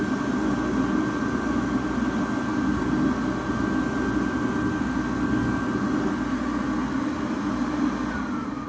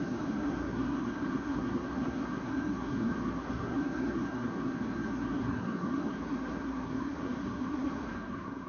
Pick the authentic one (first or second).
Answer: first